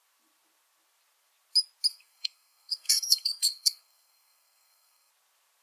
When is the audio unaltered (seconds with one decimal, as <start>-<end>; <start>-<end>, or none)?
0.0-1.9; 5.1-5.6